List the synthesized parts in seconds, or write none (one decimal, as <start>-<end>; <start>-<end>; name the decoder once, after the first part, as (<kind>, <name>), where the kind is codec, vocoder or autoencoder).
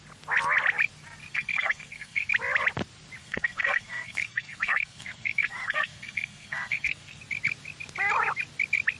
1.2-2.3 (codec, SNAC); 3.2-7.2